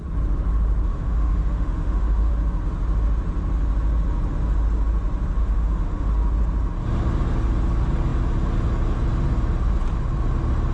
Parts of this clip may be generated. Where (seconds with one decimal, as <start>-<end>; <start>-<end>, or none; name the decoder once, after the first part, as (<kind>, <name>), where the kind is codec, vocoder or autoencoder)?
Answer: 0.9-2.3 (autoencoder, DAC-VAE); 5.4-6.1